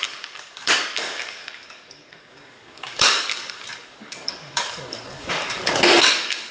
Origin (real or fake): fake